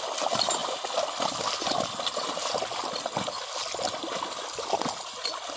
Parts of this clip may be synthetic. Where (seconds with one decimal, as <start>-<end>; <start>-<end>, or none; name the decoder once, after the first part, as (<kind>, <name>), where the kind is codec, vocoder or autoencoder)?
none